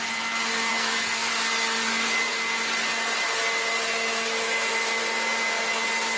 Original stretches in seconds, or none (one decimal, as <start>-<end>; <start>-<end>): 0.0-0.7; 1.3-6.2